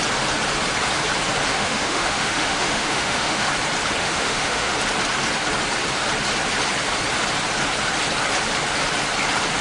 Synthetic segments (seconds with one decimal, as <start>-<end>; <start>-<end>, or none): 1.5-3.5; 4.0-4.7